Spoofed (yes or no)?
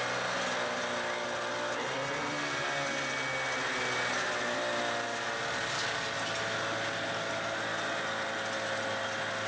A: no